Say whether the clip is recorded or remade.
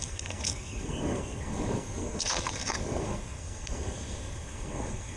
remade